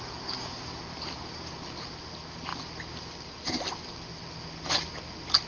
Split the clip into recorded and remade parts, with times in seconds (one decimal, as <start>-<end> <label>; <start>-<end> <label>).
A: 0.0-5.5 recorded